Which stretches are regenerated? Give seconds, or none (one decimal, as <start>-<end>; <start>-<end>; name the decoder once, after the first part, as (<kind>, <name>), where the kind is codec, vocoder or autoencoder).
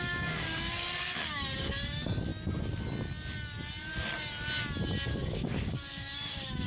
0.0-2.3 (codec, DAC); 5.1-6.7